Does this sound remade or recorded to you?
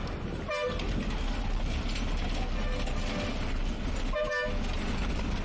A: recorded